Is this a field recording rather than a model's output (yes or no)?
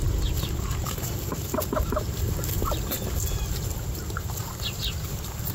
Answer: yes